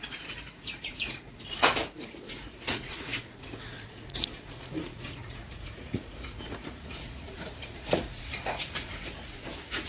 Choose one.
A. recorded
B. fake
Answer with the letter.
B